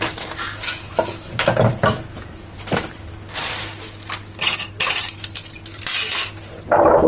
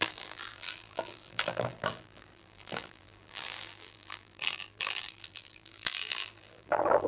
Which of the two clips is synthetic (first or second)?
second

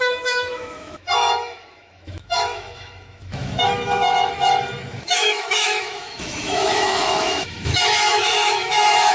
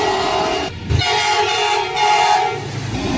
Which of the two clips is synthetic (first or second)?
first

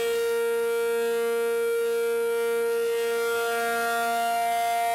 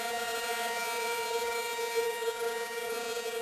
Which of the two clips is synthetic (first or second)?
second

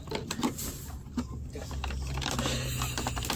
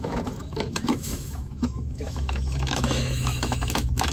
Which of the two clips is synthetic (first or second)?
second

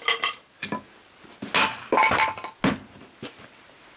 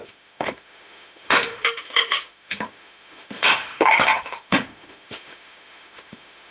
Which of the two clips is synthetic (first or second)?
second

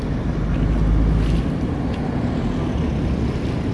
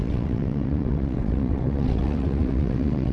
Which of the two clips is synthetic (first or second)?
second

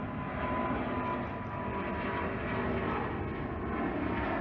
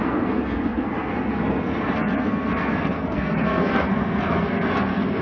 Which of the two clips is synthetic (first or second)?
second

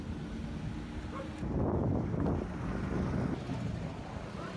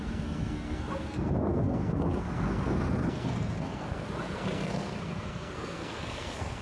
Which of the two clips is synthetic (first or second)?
second